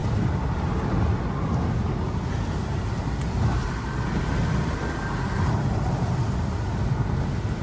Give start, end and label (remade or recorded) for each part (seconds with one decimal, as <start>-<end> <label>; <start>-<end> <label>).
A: 0.0-7.6 recorded